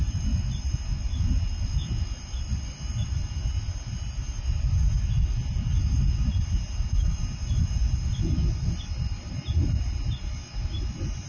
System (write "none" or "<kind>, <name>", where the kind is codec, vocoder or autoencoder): none